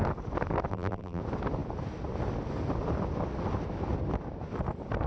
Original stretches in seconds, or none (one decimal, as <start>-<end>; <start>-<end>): 0.0-0.7; 1.2-5.1